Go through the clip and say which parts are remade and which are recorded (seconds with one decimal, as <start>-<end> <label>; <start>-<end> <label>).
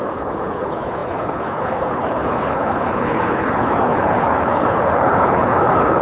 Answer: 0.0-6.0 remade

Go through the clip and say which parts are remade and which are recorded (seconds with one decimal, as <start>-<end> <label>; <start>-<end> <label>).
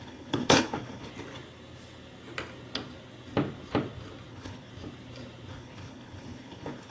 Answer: 0.0-1.1 remade; 1.1-4.3 recorded; 4.3-4.7 remade; 4.7-5.5 recorded; 5.5-6.9 remade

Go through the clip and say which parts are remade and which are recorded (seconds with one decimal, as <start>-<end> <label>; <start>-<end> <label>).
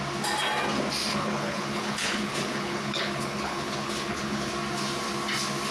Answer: 0.0-1.1 recorded; 1.1-4.5 remade; 4.5-5.7 recorded